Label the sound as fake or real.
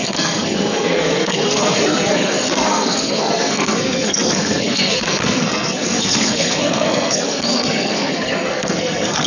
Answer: fake